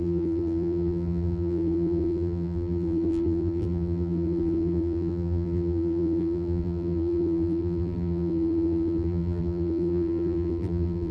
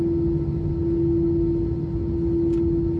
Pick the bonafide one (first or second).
second